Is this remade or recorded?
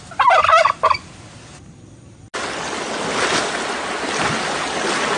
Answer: recorded